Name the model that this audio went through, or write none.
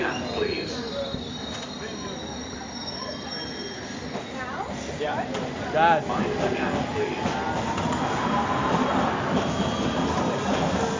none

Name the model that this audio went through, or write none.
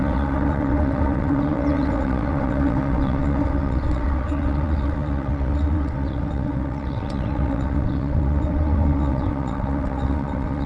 vocoder, WaveNeXt